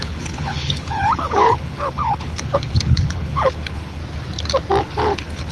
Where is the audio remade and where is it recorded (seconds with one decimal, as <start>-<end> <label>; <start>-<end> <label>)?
0.0-4.0 remade; 4.0-4.8 recorded; 4.8-5.5 remade